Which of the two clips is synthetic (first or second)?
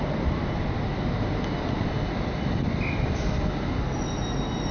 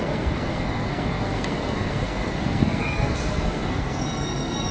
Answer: second